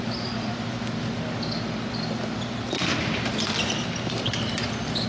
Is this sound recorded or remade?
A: recorded